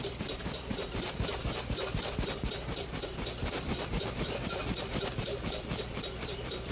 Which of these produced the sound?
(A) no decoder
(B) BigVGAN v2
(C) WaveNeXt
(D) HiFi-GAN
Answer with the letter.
B